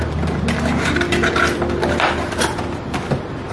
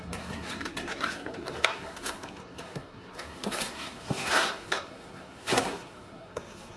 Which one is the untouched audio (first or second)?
first